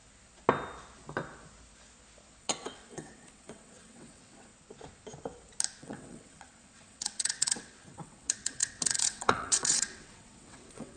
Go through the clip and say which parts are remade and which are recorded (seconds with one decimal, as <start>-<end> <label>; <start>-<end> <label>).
0.0-2.4 recorded; 2.4-4.5 remade; 4.5-5.8 recorded; 5.8-11.0 remade